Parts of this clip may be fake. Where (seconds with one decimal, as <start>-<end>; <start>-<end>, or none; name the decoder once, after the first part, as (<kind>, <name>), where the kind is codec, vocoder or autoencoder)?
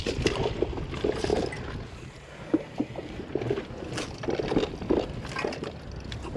none